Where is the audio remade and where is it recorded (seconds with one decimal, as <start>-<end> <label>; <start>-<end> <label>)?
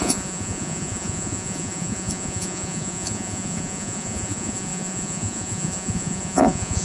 0.0-6.8 remade